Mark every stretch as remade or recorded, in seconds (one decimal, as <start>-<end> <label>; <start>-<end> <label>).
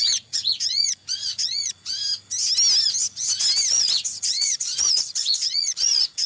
0.0-2.0 remade; 2.0-3.7 recorded; 3.7-6.3 remade